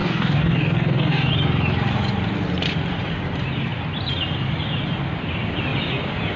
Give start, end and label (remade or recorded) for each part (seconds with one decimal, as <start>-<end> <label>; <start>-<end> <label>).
0.0-1.3 remade; 1.3-6.4 recorded